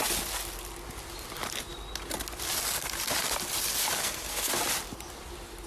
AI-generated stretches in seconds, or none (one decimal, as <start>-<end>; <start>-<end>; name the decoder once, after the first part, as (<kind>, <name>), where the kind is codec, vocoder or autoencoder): 4.0-4.5 (codec, SNAC)